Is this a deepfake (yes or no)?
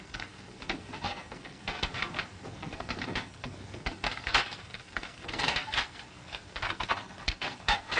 yes